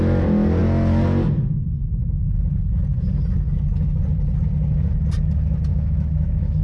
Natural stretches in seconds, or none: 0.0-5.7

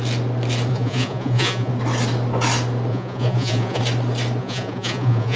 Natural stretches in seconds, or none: 0.0-0.7; 1.7-2.9; 3.8-4.4

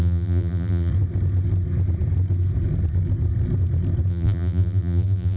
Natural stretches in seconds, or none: 0.9-4.1

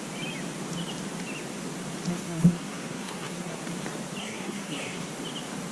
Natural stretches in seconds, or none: 0.0-2.1; 3.6-4.2; 5.1-5.7

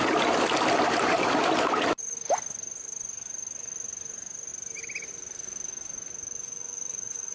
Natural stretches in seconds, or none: 0.0-7.3

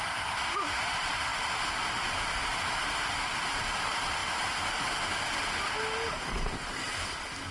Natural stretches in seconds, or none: 0.0-7.5

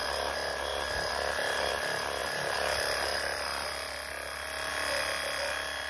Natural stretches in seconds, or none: 0.0-5.9

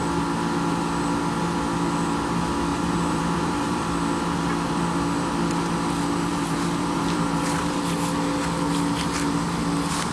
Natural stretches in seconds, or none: 0.0-2.7; 3.9-6.3; 7.9-10.1